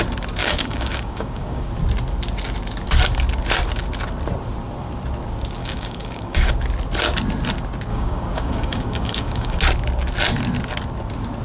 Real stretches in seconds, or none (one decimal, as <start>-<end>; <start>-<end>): 0.0-0.4; 1.7-5.6; 6.5-7.9; 9.6-11.4